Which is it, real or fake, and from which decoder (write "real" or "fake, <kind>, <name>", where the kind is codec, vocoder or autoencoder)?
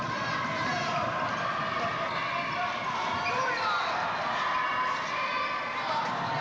real